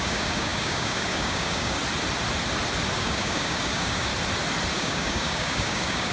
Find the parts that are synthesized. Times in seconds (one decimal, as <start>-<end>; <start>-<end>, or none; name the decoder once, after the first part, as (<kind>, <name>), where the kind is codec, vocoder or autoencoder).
0.0-1.8 (codec, DAC); 2.9-4.1; 4.7-6.1